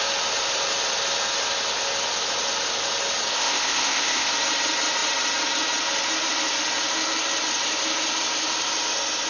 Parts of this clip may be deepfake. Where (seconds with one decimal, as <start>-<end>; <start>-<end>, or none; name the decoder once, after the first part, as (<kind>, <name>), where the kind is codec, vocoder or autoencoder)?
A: 3.3-4.3 (codec, ZipCodec)